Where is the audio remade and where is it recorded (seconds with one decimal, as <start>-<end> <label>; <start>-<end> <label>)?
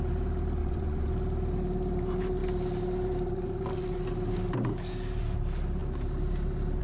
0.0-0.6 recorded; 0.6-1.1 remade; 1.1-6.8 recorded